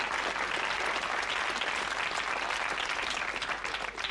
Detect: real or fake real